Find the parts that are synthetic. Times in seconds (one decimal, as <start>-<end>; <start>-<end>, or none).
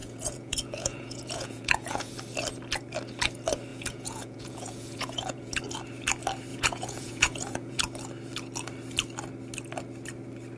0.0-2.1; 3.7-5.6; 6.5-7.8